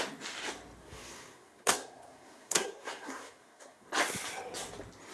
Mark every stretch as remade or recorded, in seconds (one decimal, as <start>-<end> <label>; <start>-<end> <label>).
0.0-0.8 recorded; 0.8-3.9 remade; 3.9-5.1 recorded